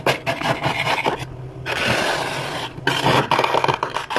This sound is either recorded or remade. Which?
recorded